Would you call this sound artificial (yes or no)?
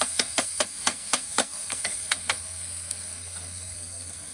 yes